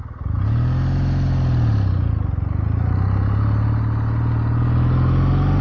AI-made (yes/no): no